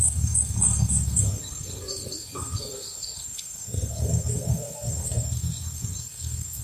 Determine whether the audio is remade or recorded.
remade